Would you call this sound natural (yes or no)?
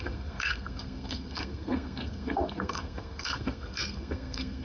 no